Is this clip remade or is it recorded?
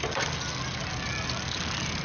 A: recorded